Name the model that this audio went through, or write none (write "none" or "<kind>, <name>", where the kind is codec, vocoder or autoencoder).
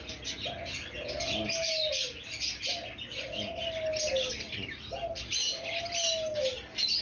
none